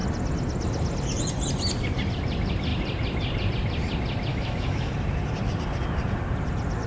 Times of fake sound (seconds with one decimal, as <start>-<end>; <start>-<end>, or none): 4.3-4.9